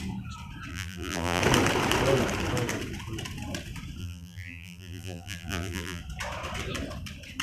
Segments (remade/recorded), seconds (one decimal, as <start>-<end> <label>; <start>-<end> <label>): 0.0-0.7 recorded; 0.7-1.4 remade; 1.4-4.0 recorded; 4.0-6.0 remade; 6.0-7.4 recorded